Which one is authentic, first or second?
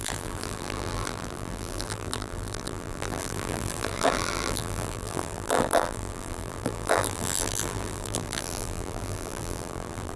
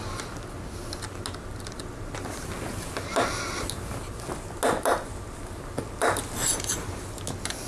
second